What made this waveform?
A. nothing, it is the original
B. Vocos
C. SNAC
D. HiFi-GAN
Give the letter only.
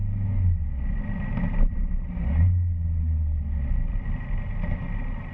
A